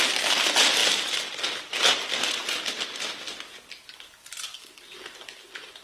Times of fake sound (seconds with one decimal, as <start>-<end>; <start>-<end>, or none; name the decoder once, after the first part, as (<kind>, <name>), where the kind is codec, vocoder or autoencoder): 0.8-1.7 (vocoder, BigVGAN v2)